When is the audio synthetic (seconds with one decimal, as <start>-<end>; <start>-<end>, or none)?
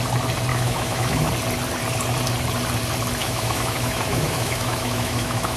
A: 0.5-1.3; 3.2-5.6